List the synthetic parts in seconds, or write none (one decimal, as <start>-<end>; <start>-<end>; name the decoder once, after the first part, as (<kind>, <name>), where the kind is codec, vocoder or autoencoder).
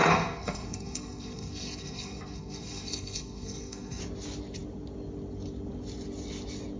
0.0-4.0 (codec, SNAC)